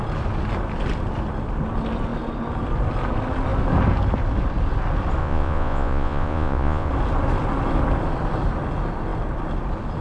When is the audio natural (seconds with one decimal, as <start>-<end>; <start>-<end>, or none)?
0.0-5.2; 6.9-10.0